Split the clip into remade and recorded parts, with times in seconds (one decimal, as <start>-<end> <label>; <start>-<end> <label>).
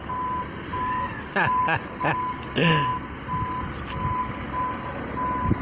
0.0-5.6 recorded